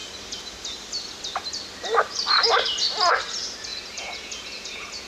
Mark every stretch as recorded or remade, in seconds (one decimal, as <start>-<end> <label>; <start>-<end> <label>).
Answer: 0.0-3.7 recorded; 3.7-5.1 remade